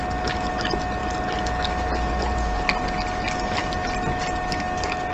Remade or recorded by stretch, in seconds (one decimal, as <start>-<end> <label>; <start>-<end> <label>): 0.0-5.1 recorded

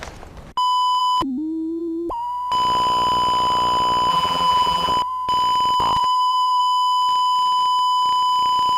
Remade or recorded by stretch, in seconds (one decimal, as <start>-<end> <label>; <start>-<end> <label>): 0.0-4.1 recorded; 4.1-4.9 remade; 4.9-6.0 recorded; 6.0-6.6 remade; 6.6-8.8 recorded

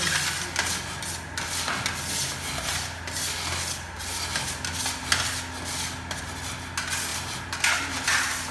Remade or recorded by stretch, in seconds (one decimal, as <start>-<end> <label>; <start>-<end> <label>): 0.0-8.5 recorded

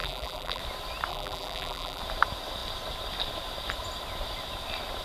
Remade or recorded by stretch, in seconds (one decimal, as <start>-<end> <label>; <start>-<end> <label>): 0.0-0.6 remade; 0.6-1.1 recorded; 1.1-2.0 remade; 2.0-5.0 recorded

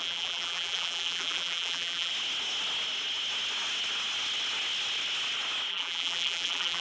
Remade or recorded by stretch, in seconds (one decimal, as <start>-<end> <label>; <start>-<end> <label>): 0.0-2.1 remade; 2.1-5.7 recorded; 5.7-6.8 remade

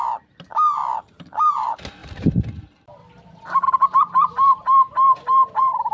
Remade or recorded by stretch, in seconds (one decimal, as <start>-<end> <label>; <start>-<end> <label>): 0.0-2.0 recorded; 2.0-5.5 remade; 5.5-5.9 recorded

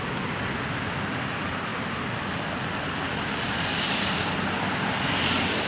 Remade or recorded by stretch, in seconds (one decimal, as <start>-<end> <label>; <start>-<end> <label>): 0.0-5.7 remade

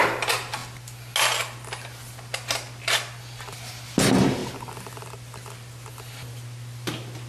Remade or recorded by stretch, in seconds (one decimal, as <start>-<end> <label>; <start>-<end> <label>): 0.0-7.3 recorded